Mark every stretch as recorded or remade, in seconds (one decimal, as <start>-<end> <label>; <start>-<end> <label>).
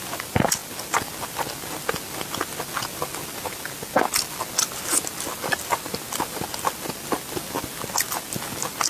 0.0-8.9 recorded